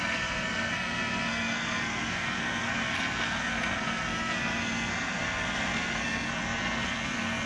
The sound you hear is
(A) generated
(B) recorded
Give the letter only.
A